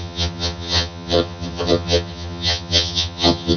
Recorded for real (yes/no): no